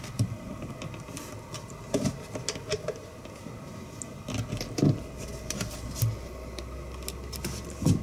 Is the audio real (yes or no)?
yes